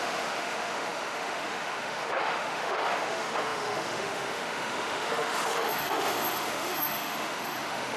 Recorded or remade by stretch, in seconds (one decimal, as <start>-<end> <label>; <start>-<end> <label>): 0.0-8.0 remade